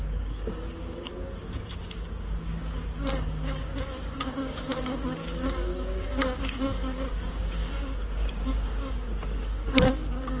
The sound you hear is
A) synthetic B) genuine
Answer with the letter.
A